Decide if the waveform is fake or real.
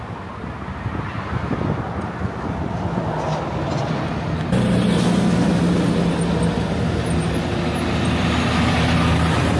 real